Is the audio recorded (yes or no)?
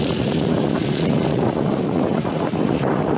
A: no